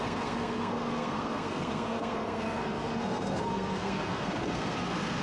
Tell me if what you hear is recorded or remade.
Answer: remade